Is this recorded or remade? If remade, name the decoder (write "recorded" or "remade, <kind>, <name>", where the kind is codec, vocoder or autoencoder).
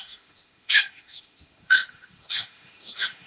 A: remade, autoencoder, DAC-VAE